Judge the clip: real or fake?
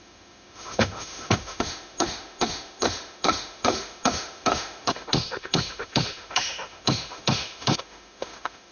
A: fake